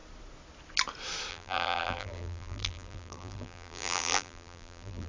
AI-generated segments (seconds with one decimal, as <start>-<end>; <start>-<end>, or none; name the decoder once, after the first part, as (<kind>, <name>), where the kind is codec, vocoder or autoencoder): 1.3-5.1 (vocoder, BigVGAN v2)